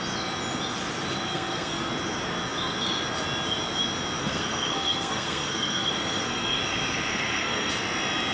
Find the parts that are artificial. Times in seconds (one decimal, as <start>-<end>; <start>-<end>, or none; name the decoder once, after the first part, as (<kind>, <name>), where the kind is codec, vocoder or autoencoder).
1.3-1.9 (codec, SNAC); 4.2-6.6; 7.1-7.7